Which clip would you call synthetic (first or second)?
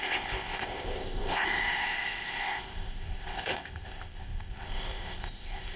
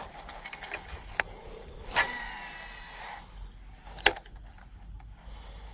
first